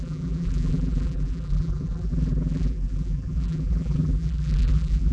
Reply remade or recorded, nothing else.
remade